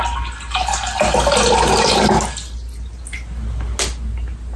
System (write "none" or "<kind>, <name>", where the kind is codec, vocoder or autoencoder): none